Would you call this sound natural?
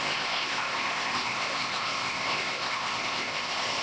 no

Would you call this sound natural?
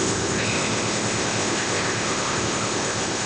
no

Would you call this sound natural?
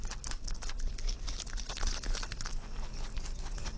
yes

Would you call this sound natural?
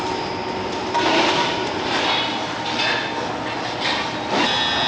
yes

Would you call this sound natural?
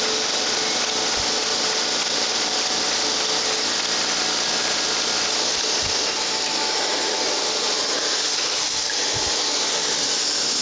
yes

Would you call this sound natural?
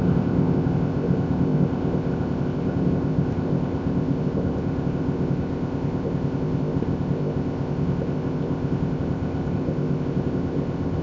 no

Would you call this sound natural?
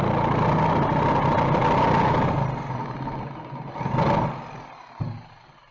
yes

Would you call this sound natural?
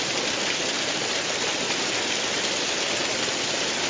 yes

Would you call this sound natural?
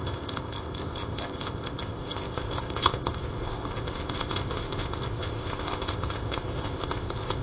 no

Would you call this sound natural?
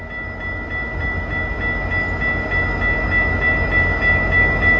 yes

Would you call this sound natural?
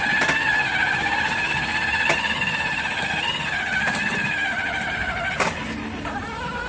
yes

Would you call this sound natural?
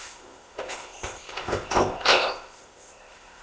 no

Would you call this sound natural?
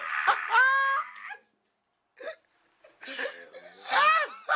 yes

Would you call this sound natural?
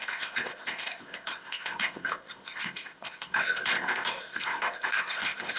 no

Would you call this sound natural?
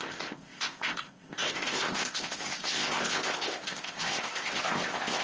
no